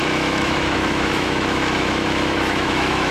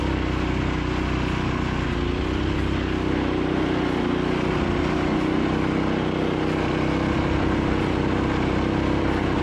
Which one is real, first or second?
second